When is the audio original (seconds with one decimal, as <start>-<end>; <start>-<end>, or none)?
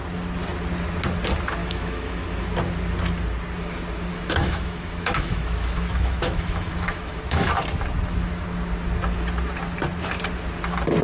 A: 0.0-1.6; 2.4-4.1; 7.5-11.0